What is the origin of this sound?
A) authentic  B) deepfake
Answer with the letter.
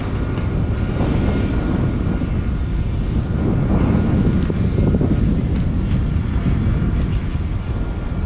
A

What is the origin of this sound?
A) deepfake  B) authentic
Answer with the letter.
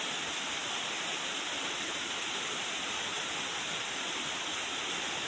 B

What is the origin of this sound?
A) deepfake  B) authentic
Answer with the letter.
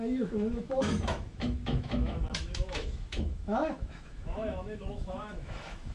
A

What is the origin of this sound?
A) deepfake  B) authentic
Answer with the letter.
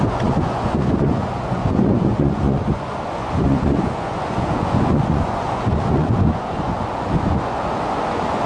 A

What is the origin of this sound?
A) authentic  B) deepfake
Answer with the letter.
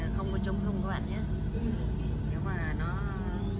A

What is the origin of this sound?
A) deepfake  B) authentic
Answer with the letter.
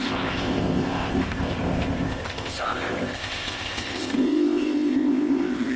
A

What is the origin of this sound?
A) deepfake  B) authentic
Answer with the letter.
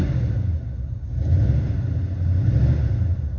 B